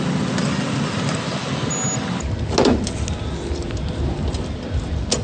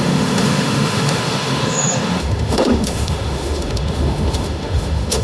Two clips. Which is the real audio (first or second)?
first